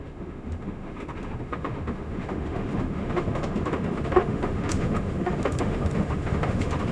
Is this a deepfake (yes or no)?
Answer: yes